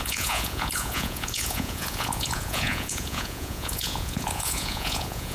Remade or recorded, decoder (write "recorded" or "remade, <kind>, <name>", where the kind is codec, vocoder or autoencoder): remade, vocoder, Vocos